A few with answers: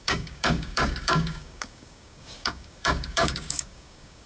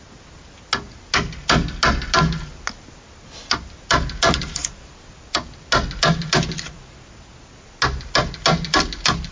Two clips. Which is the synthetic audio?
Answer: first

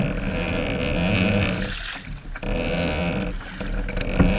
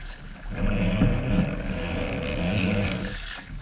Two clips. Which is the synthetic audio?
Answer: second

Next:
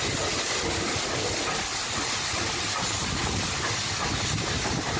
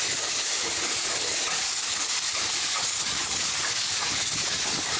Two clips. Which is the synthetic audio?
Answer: second